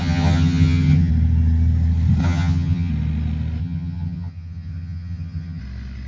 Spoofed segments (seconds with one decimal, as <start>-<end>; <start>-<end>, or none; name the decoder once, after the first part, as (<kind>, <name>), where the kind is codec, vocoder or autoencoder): 0.0-1.1 (vocoder, HiFi-GAN); 2.2-2.9; 3.6-5.6